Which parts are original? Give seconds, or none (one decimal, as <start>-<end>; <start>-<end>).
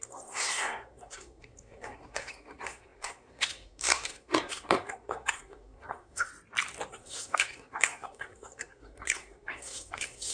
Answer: 6.3-6.9